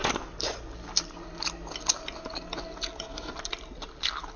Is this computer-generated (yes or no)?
no